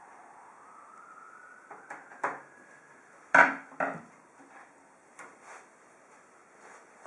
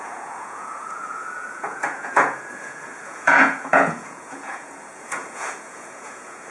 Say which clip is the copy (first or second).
second